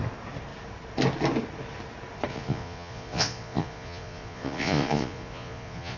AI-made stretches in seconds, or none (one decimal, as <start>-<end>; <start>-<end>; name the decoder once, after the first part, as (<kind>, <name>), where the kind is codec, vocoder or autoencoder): 2.3-6.0 (vocoder, Vocos)

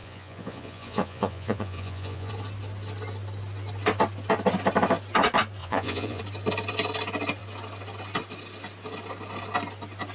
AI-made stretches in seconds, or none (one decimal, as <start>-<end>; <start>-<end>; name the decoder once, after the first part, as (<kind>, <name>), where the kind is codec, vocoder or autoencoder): 0.0-2.3 (vocoder, Vocos); 5.6-6.2

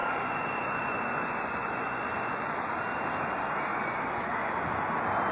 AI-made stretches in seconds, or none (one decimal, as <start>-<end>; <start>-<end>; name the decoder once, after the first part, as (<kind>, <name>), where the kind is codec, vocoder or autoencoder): 0.0-2.6 (vocoder, Vocos); 3.7-4.5

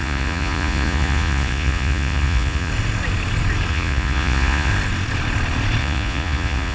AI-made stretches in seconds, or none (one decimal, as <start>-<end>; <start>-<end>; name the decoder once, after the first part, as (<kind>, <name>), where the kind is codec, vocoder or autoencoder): 0.0-2.7 (vocoder, Vocos); 3.7-4.7; 5.8-6.7